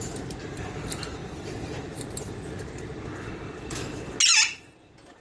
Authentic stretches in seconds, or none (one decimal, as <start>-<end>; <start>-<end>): 0.0-5.2

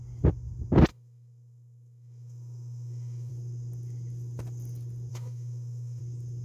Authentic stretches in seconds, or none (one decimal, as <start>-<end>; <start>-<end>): 0.0-0.9; 3.3-5.1; 6.0-6.4

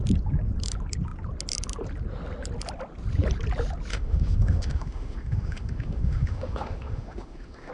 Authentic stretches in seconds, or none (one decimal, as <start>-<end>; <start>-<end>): 0.0-3.9

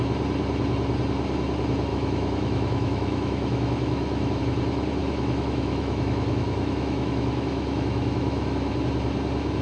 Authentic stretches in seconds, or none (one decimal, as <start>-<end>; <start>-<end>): 0.0-1.9; 4.4-5.0; 8.7-9.6

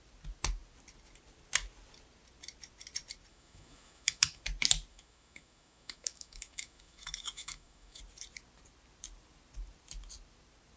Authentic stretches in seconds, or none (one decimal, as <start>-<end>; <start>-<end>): 0.0-3.3; 4.4-4.9; 8.0-10.8

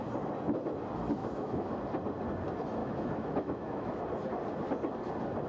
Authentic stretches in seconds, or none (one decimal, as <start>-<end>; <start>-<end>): 0.0-1.2; 1.8-2.8; 4.0-5.5